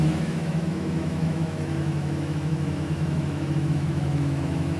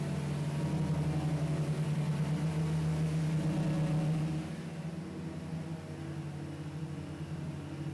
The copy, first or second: first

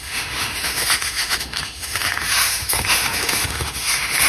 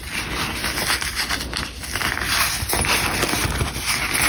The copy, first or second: first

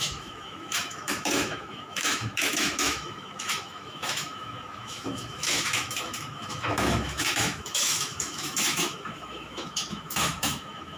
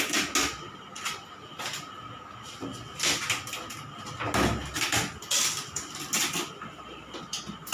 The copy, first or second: first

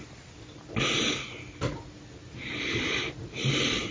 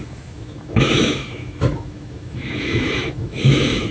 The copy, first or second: second